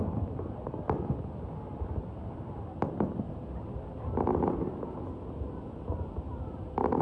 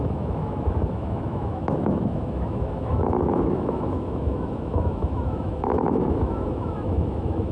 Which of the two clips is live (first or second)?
first